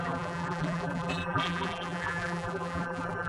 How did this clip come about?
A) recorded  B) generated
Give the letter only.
B